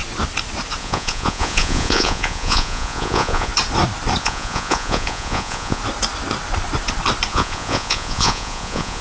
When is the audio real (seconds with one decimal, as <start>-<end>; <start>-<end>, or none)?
0.0-0.8; 3.5-4.2; 5.8-7.3